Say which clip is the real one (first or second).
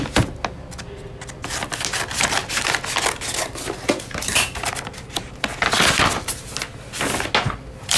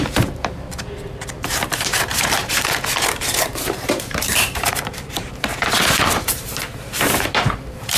first